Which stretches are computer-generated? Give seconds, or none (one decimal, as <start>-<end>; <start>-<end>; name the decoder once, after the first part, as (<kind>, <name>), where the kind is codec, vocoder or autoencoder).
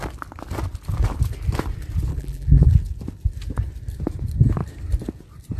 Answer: 2.1-2.7 (vocoder, BigVGAN v2)